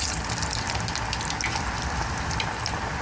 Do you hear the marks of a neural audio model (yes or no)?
no